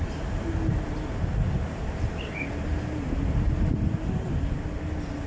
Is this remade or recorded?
recorded